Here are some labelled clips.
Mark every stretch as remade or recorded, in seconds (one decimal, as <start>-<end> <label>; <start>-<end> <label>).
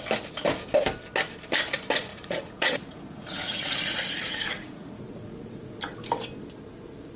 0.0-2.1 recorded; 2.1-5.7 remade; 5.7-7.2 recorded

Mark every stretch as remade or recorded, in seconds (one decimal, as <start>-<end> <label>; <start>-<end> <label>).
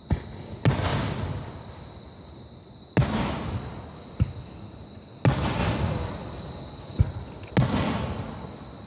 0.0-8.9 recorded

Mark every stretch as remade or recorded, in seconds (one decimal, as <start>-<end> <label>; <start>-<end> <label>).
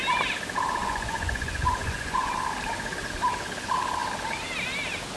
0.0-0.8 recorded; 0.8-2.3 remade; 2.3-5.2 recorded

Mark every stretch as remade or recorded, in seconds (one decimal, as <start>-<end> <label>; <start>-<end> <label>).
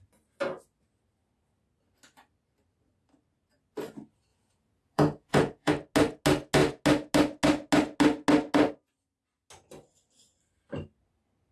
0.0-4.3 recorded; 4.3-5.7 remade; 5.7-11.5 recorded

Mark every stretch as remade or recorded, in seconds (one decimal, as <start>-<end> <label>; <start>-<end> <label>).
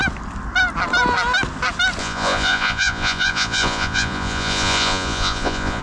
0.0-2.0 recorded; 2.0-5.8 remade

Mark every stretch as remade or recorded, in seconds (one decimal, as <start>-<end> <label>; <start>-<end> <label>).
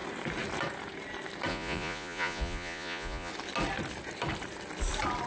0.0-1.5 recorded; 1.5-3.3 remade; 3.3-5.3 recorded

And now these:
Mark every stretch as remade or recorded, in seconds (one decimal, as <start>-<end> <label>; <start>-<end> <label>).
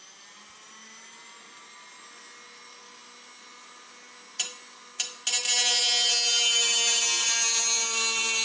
0.0-8.4 recorded